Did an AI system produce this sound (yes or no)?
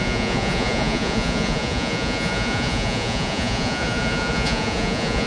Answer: yes